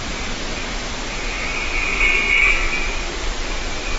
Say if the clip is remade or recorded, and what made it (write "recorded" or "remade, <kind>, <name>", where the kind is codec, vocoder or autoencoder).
recorded